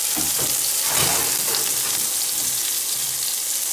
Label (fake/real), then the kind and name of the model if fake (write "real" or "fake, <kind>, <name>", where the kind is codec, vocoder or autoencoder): real